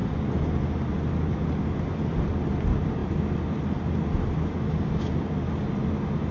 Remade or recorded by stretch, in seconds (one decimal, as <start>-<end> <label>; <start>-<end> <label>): 0.0-6.3 recorded